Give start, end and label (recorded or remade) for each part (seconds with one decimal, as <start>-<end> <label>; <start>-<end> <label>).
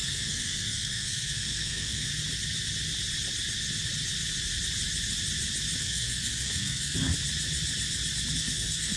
0.0-2.1 remade; 2.1-5.8 recorded; 5.8-7.1 remade; 7.1-8.3 recorded; 8.3-9.0 remade